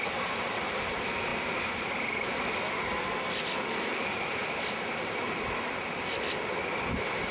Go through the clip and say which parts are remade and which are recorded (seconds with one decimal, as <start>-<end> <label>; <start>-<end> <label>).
0.0-7.3 remade